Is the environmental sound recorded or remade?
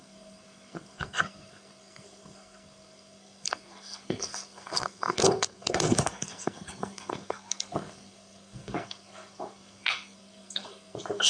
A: remade